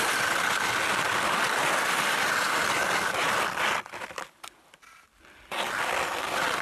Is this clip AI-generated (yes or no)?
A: no